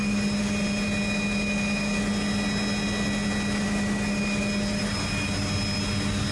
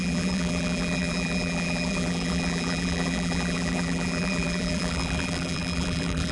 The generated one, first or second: second